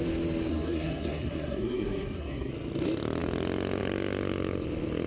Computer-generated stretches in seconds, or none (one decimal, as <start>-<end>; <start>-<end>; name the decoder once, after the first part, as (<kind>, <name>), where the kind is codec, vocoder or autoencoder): 0.5-2.5 (codec, SNAC)